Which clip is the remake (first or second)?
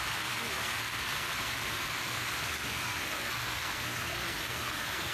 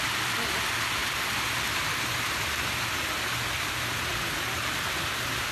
first